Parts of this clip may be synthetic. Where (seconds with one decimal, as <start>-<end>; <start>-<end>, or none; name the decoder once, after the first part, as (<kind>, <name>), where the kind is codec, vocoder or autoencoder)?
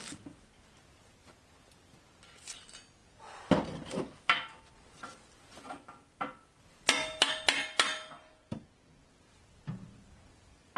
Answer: none